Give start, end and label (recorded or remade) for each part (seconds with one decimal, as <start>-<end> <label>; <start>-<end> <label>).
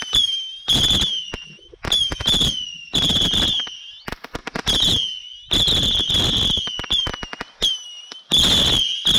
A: 0.0-9.2 recorded